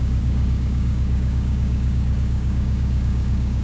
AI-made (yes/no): yes